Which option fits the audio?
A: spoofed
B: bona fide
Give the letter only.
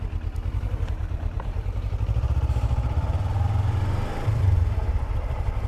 A